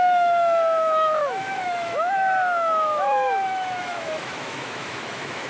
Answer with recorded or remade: remade